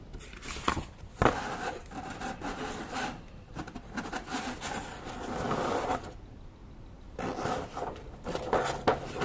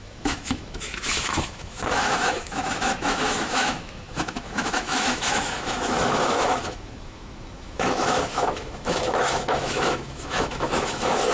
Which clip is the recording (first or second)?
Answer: first